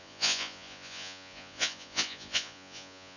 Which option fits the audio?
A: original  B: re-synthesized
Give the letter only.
B